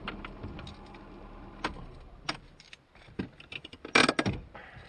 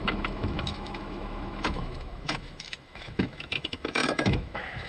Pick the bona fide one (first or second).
first